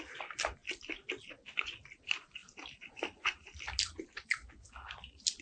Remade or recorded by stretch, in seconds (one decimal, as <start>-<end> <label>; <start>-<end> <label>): 0.0-2.4 recorded; 2.4-3.8 remade; 3.8-5.4 recorded